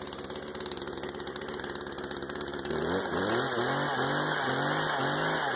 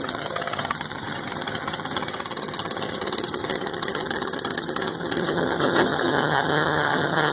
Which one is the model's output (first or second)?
second